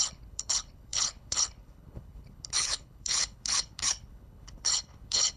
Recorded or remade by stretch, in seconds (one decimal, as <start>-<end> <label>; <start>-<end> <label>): 0.0-5.4 remade